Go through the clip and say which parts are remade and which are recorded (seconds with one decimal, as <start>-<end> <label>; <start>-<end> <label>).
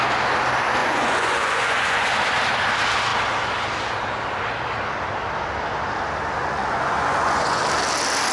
0.0-0.8 recorded; 0.8-2.1 remade; 2.1-6.4 recorded; 6.4-7.6 remade; 7.6-8.3 recorded